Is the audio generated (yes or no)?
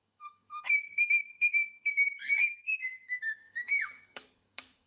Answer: yes